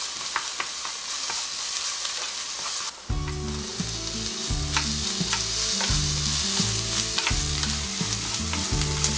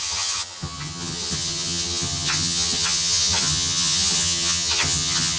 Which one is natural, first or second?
first